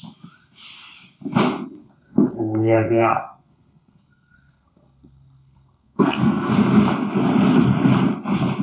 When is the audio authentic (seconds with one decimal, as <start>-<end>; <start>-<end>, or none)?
0.0-1.8; 6.5-8.6